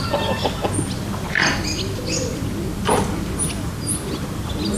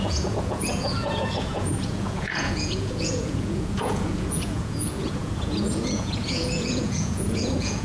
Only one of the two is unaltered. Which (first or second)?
first